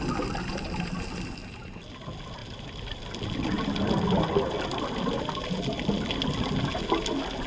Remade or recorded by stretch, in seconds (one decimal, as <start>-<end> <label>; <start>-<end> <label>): 0.0-7.5 recorded